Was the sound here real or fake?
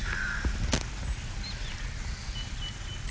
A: real